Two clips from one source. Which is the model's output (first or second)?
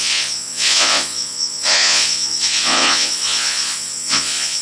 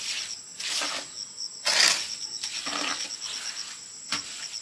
first